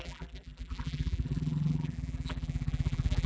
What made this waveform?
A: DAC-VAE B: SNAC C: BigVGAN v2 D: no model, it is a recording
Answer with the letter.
C